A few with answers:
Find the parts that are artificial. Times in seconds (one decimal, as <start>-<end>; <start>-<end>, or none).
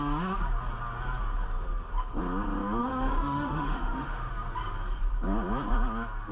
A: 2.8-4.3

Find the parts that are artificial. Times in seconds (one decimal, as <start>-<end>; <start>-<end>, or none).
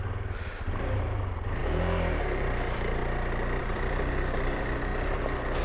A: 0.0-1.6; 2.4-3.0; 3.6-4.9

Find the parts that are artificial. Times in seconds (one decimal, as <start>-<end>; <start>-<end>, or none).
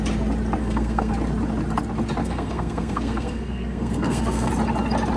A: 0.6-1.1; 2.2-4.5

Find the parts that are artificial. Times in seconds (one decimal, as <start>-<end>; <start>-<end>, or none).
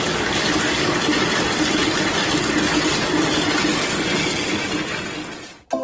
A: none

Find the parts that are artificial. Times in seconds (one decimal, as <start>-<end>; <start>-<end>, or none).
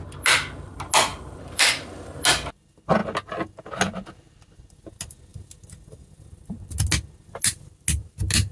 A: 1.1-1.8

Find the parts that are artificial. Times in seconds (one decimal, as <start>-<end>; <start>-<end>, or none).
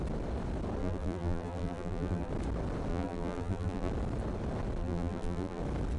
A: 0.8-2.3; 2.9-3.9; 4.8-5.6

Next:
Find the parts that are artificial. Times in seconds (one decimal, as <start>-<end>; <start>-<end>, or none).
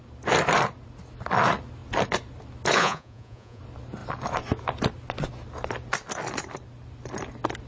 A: 2.8-3.6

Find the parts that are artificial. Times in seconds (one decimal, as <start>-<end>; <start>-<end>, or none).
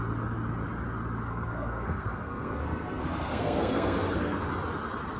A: 1.3-4.4